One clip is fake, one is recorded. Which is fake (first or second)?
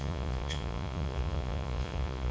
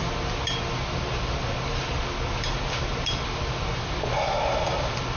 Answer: first